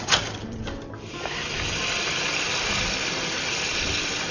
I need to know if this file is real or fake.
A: fake